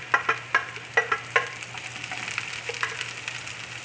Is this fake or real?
real